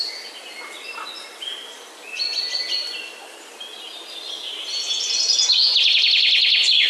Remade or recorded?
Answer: recorded